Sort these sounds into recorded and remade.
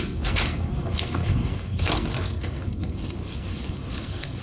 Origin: remade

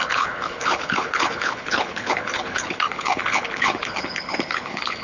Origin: remade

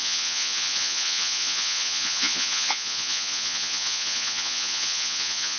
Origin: remade